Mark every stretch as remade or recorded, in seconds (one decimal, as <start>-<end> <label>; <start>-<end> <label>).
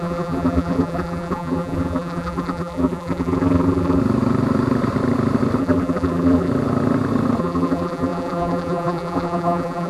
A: 0.0-4.0 remade; 4.0-5.6 recorded; 5.6-6.5 remade; 6.5-7.4 recorded; 7.4-9.9 remade